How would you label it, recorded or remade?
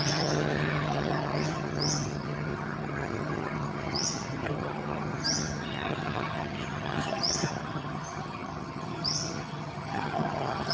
remade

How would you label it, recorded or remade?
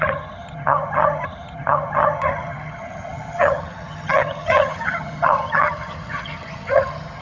remade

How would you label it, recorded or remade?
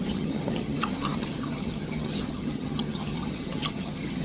remade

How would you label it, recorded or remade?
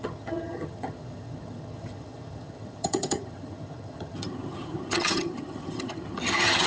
remade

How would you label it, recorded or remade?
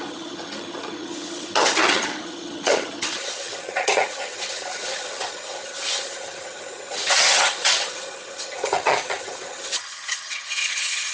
remade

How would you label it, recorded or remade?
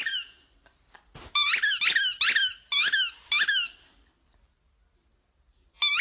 recorded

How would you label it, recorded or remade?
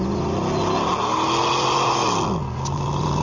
recorded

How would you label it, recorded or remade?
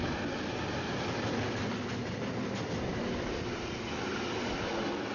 recorded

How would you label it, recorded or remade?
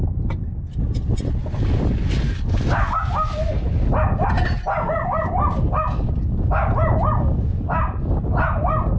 recorded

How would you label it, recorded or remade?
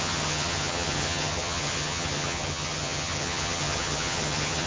remade